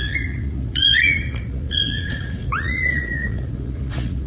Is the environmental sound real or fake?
fake